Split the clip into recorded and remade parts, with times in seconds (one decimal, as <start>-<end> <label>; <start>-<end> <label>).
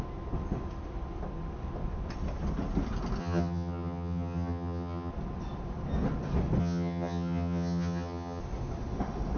0.0-3.2 recorded; 3.2-5.1 remade; 5.1-6.6 recorded; 6.6-8.4 remade; 8.4-9.4 recorded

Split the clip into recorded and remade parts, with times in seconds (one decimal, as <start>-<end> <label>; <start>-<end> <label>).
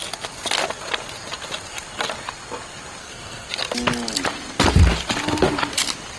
0.0-3.0 recorded; 3.0-3.5 remade; 3.5-6.2 recorded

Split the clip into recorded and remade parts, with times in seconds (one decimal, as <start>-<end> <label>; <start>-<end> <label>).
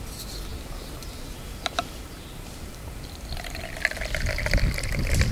0.0-0.5 recorded; 0.5-3.2 remade; 3.2-5.3 recorded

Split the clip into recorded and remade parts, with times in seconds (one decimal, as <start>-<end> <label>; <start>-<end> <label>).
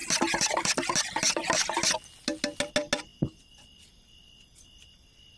0.0-5.4 recorded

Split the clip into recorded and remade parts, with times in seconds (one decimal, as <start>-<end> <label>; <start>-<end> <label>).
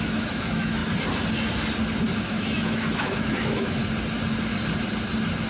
0.0-0.8 remade; 0.8-2.2 recorded; 2.2-3.8 remade; 3.8-5.5 recorded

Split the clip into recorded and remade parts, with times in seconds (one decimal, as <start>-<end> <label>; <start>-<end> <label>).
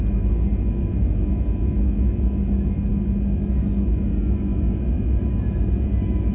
0.0-6.3 recorded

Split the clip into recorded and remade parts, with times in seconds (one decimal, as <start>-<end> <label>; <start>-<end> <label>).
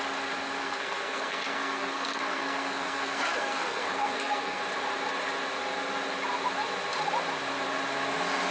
0.0-0.6 recorded; 0.6-4.6 remade; 4.6-8.5 recorded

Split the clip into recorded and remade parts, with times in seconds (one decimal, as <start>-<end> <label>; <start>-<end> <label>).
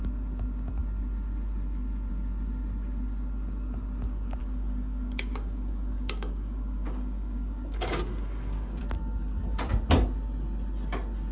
0.0-4.4 recorded; 4.4-8.8 remade; 8.8-11.3 recorded